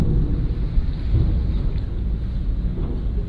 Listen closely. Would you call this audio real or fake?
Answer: real